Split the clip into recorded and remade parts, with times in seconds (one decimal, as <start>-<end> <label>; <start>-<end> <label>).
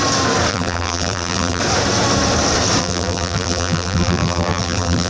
0.0-0.5 recorded; 0.5-1.6 remade; 1.6-2.8 recorded; 2.8-5.1 remade